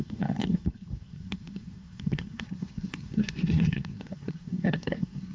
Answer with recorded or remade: remade